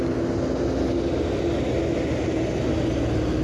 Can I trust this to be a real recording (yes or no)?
yes